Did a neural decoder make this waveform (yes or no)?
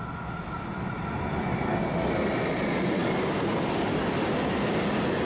no